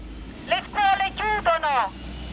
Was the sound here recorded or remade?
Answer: recorded